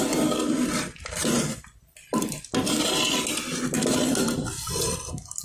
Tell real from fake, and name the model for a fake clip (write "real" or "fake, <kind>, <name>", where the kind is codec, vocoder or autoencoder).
real